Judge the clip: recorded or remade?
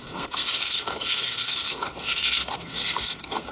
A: remade